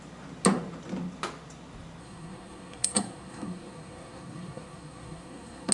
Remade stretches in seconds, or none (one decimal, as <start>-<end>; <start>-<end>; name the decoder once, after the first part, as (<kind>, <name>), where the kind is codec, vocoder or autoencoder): 2.0-5.7 (codec, SNAC)